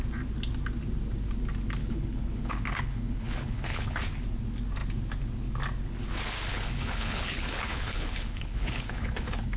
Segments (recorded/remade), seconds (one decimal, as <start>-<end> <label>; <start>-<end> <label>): 0.0-1.8 recorded; 1.8-4.0 remade; 4.0-6.5 recorded; 6.5-9.6 remade